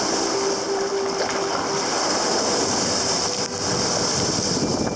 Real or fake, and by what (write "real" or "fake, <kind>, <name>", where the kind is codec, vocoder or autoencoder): real